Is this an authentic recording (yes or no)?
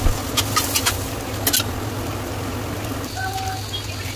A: yes